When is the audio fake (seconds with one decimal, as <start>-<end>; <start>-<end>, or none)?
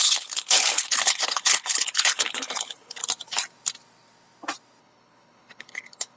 0.0-3.0; 4.8-6.2